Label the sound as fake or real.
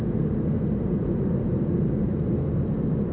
real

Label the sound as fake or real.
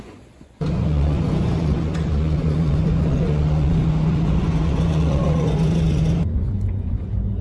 fake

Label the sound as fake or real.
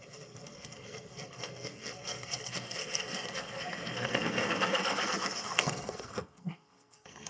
fake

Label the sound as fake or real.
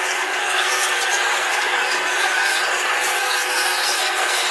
fake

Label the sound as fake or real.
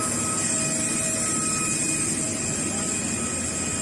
real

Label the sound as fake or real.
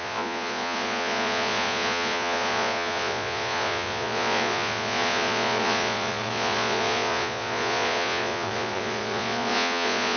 fake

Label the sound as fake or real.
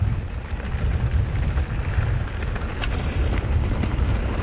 real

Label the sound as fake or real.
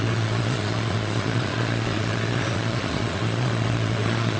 fake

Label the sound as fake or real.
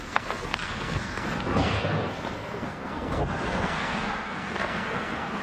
fake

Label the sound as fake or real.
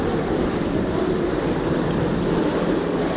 real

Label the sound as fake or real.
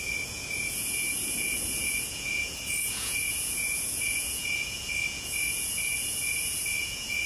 fake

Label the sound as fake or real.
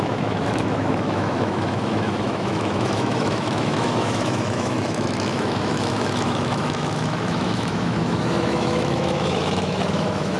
fake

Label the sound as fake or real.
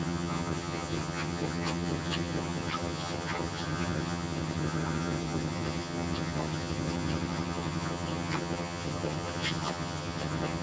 fake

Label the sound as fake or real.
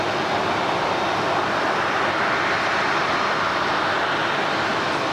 real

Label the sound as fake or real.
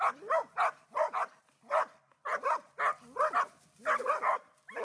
real